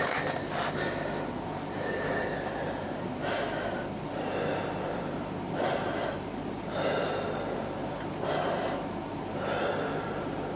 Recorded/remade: recorded